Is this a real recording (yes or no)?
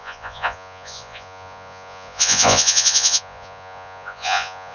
no